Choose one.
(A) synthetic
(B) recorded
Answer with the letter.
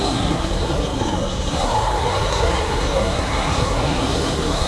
A